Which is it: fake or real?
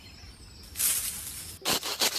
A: real